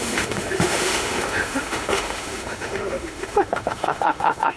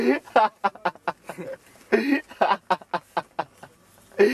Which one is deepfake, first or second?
first